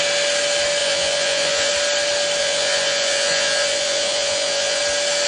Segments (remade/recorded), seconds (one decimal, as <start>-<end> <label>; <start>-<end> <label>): 0.0-0.8 recorded; 0.8-1.7 remade; 1.7-2.4 recorded; 2.4-4.8 remade; 4.8-5.3 recorded